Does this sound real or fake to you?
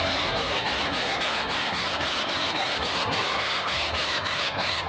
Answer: fake